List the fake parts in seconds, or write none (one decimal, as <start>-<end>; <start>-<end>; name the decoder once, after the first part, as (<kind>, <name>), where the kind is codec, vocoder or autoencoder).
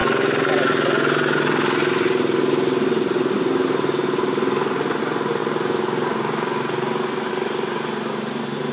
none